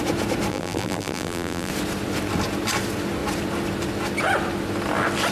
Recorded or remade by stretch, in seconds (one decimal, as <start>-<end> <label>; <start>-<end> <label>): 0.0-0.5 recorded; 0.5-1.7 remade; 1.7-5.3 recorded